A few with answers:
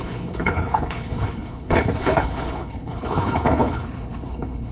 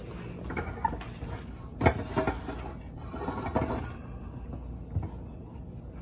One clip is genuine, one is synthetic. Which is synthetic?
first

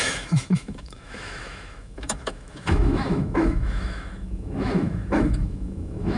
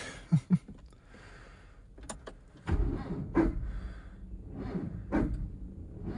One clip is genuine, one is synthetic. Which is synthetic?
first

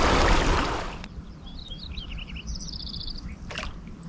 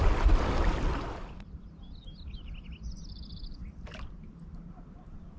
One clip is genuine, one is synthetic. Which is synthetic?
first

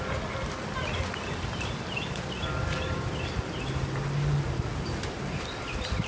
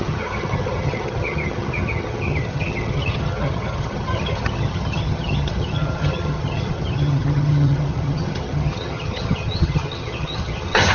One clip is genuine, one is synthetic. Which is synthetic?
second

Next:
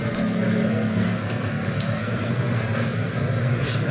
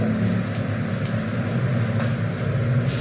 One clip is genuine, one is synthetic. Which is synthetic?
first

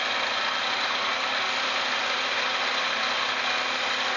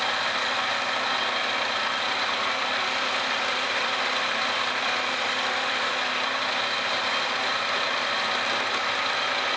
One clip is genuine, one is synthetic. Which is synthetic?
second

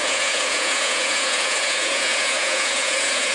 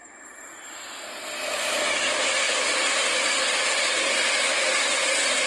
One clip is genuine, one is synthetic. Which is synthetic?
first